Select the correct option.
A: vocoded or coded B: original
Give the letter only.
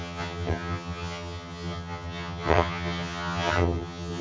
A